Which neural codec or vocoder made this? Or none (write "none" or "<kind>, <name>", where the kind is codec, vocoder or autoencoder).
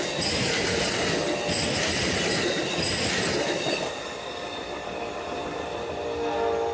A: none